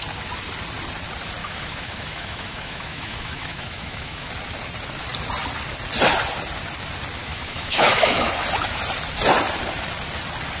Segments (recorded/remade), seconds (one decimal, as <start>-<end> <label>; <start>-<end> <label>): 0.0-1.4 recorded; 1.4-4.3 remade; 4.3-7.2 recorded; 7.2-8.3 remade; 8.3-10.6 recorded